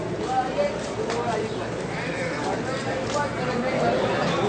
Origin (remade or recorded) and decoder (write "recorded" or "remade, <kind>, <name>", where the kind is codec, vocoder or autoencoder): recorded